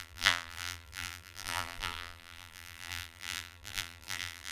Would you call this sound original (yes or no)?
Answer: no